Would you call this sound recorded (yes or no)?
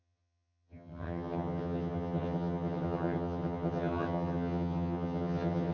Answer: no